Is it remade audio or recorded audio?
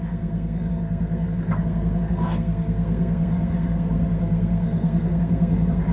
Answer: remade